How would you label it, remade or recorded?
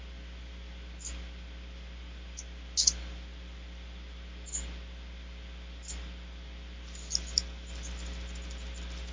recorded